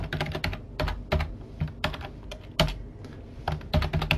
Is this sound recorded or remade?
recorded